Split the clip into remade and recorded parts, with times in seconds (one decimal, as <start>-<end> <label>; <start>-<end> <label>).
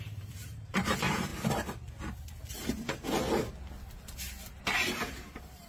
0.0-1.3 remade; 1.3-4.6 recorded; 4.6-5.7 remade